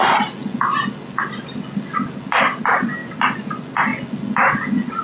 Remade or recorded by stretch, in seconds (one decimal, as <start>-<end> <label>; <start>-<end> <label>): 0.0-5.0 recorded